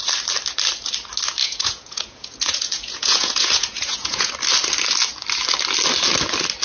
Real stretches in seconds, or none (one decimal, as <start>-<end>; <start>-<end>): 0.0-1.4; 4.3-6.6